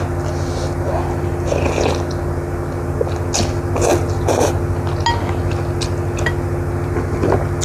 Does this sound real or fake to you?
real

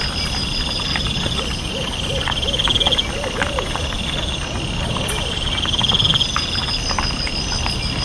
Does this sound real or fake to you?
real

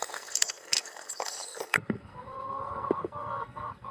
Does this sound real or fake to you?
fake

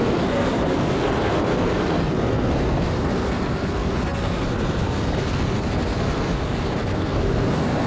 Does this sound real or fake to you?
fake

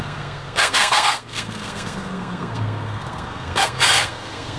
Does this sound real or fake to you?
fake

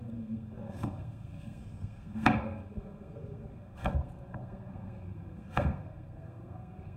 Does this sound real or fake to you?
fake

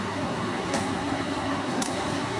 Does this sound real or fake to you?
fake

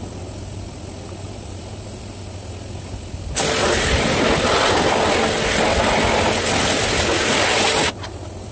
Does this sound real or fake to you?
real